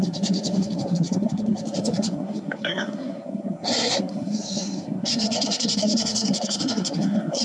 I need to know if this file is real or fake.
fake